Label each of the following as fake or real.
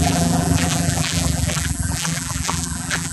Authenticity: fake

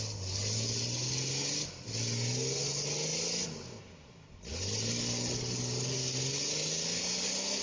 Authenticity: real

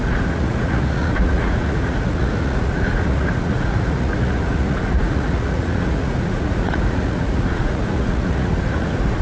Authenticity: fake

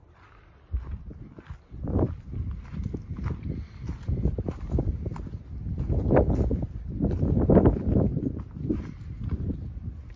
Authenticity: real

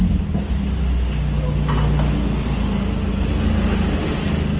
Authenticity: real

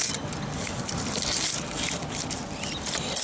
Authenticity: real